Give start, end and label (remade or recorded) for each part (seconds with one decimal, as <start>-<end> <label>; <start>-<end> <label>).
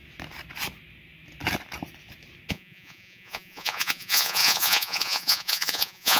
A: 0.0-2.5 recorded; 2.5-6.2 remade